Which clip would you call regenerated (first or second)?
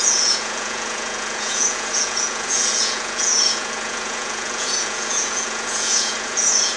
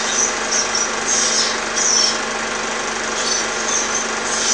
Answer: first